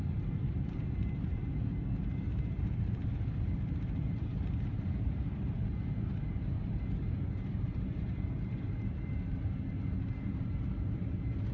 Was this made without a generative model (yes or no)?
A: no